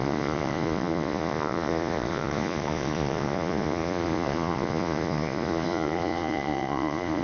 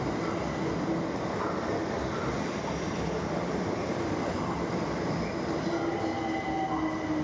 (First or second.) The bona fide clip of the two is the second